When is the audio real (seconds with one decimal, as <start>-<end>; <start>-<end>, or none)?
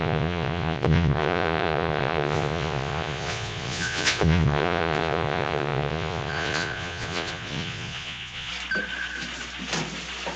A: 8.5-10.4